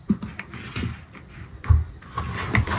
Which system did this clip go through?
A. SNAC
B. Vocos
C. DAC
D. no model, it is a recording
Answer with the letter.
D